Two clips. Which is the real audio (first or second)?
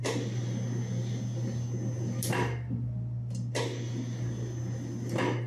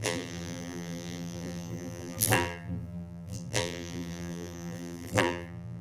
first